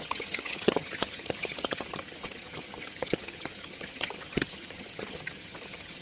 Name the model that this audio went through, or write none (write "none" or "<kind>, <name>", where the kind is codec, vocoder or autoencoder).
vocoder, HiFi-GAN